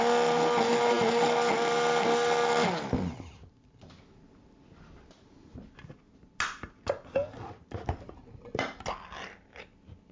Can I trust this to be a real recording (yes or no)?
yes